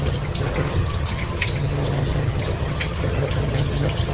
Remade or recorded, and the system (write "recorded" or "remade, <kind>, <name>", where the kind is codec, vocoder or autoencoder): remade, vocoder, HiFi-GAN